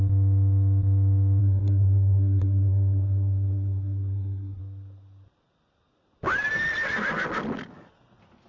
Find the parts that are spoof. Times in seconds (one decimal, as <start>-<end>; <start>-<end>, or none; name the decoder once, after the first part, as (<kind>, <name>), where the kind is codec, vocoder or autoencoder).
1.4-4.6 (codec, SNAC)